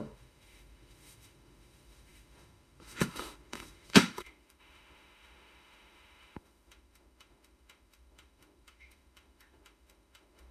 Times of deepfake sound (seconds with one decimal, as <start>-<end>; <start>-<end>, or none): 0.0-10.5